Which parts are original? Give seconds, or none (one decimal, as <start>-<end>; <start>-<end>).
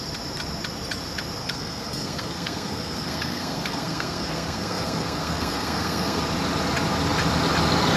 0.0-1.4; 6.2-8.0